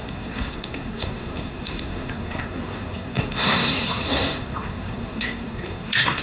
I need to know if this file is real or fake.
fake